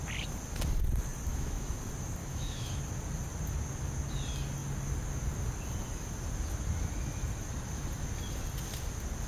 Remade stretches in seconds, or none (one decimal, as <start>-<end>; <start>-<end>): 1.3-1.8; 2.2-2.8